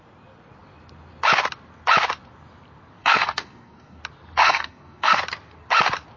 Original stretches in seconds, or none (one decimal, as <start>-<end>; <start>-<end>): 0.0-3.0; 4.0-4.4; 5.2-6.2